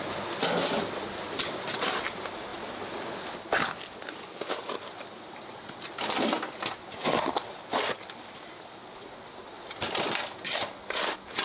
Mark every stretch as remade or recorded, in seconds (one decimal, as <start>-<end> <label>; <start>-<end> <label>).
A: 0.0-11.4 recorded